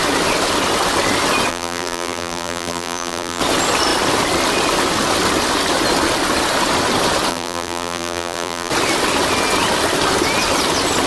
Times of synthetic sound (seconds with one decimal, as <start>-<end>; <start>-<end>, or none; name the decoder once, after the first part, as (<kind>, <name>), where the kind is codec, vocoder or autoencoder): 1.5-3.4 (vocoder, BigVGAN v2); 7.3-8.7